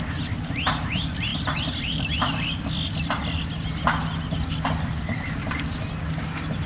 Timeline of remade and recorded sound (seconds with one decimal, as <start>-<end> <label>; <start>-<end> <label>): 0.0-6.7 recorded